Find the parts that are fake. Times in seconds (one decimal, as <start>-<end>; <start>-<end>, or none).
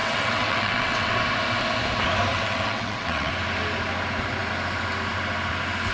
0.0-1.2; 2.3-3.3